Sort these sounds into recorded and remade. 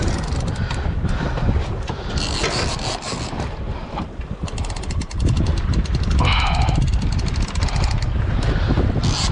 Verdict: recorded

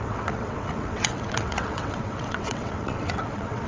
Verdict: remade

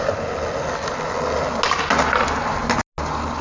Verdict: recorded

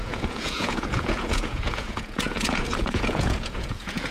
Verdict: remade